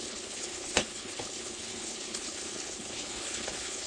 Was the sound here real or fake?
fake